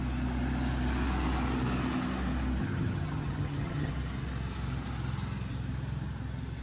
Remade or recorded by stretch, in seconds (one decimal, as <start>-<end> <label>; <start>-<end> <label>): 0.0-2.6 recorded; 2.6-3.9 remade; 3.9-6.6 recorded

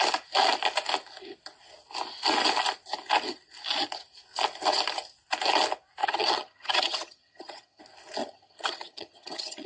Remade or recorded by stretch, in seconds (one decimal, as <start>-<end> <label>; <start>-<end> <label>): 0.0-6.0 recorded; 6.0-7.8 remade; 7.8-8.2 recorded; 8.2-9.7 remade

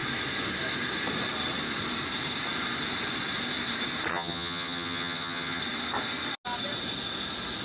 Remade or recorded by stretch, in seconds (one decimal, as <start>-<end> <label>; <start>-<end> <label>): 0.0-4.1 recorded; 4.1-5.6 remade; 5.6-7.6 recorded

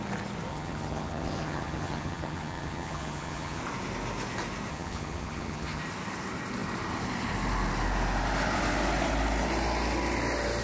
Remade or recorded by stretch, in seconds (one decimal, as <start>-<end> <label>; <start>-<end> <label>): 0.0-0.5 recorded; 0.5-3.6 remade; 3.6-4.7 recorded; 4.7-5.8 remade; 5.8-10.6 recorded